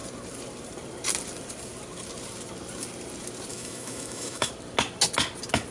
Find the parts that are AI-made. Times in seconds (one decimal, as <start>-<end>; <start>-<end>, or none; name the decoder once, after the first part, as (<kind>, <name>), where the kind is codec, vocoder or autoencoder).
3.5-4.5 (autoencoder, DAC-VAE)